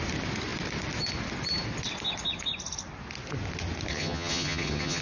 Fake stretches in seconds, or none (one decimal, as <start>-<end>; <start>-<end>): 3.9-5.0